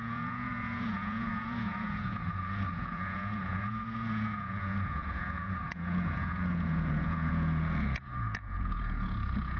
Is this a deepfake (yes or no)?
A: yes